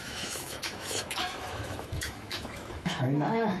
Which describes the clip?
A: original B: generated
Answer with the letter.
B